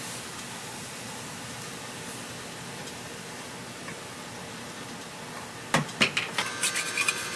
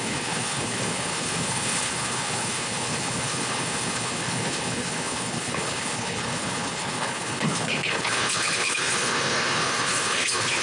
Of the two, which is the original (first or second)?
first